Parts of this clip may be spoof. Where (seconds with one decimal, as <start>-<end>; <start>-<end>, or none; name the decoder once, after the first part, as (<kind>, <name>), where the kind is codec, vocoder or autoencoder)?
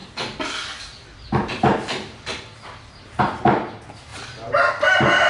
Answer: none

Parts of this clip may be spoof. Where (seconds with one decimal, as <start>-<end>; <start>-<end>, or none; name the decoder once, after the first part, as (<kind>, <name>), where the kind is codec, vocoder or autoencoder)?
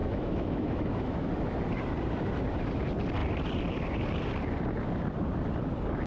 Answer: 0.0-1.3 (autoencoder, DAC-VAE)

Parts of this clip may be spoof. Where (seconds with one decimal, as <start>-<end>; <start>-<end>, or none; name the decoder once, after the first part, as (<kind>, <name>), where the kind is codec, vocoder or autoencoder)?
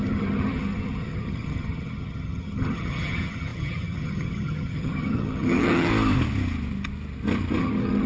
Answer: 0.0-5.9 (vocoder, HiFi-GAN); 7.6-8.1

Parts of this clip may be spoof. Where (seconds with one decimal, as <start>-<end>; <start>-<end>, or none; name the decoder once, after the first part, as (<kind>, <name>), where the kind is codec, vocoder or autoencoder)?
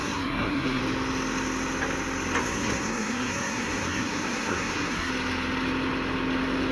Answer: 0.0-0.8 (codec, SNAC); 2.4-5.1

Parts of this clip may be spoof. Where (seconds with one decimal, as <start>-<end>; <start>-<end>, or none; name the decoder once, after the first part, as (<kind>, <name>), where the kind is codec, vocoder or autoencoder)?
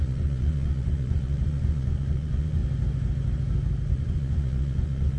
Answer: 0.0-2.6 (vocoder, Vocos); 3.9-5.2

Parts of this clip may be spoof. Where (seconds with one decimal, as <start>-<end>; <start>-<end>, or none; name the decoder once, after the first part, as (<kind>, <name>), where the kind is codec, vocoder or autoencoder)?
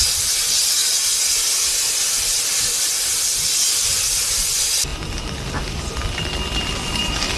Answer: none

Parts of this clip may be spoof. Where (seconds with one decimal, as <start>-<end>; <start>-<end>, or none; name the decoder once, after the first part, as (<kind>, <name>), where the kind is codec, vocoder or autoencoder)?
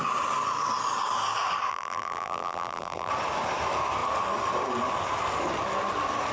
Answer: 1.7-3.1 (vocoder, BigVGAN v2)